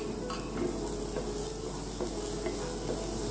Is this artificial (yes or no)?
no